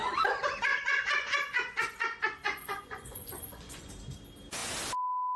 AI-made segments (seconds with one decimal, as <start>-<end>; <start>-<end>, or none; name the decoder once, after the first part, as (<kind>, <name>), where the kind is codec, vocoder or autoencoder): 0.7-3.9 (vocoder, Vocos)